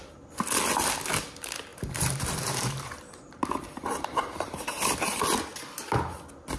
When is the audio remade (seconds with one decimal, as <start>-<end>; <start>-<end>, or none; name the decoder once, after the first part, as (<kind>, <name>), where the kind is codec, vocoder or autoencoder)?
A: 1.7-5.4 (vocoder, BigVGAN v2)